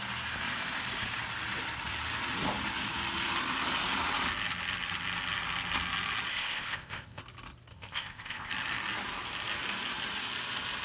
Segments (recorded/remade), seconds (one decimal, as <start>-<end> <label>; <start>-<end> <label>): 0.0-6.3 recorded; 6.3-7.2 remade; 7.2-7.7 recorded; 7.7-8.5 remade; 8.5-10.8 recorded